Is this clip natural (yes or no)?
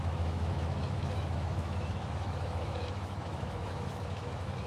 no